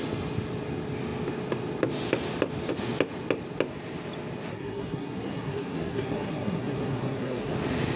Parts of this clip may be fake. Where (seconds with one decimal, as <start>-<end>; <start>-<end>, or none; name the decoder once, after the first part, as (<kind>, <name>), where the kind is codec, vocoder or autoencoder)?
4.5-7.5 (codec, SNAC)